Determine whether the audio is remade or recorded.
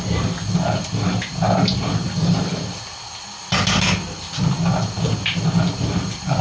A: recorded